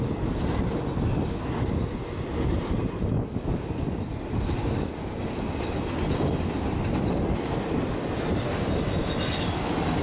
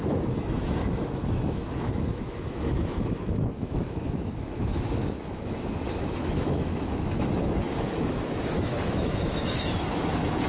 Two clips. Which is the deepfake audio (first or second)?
second